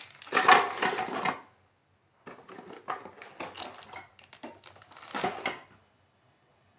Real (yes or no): yes